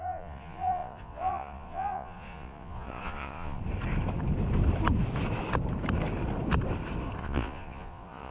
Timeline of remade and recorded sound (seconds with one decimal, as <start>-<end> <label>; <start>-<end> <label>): 0.0-3.6 remade; 3.6-7.2 recorded; 7.2-8.3 remade